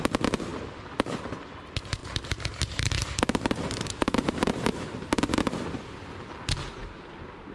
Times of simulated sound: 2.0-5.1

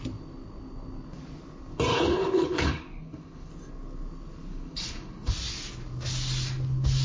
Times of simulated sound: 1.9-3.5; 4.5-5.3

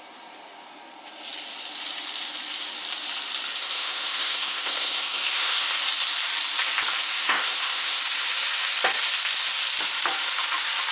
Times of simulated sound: 3.6-5.6; 7.1-8.0

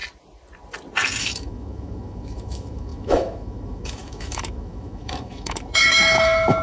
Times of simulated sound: 1.2-6.6

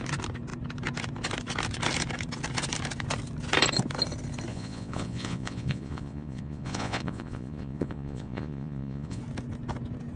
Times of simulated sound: 4.5-9.2

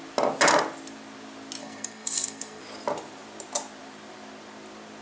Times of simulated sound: 1.6-2.6

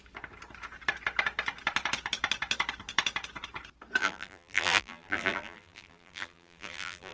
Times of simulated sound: 4.0-7.1